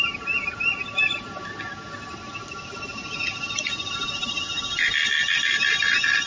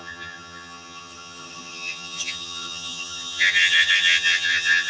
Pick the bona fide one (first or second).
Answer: first